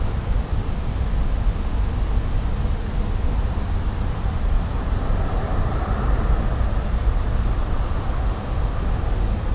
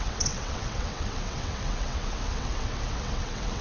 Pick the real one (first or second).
first